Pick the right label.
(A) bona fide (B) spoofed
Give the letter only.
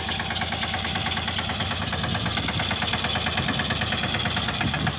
A